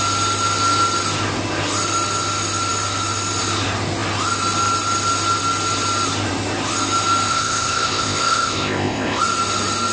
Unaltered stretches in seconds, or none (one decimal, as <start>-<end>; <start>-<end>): 0.0-7.3; 9.2-9.9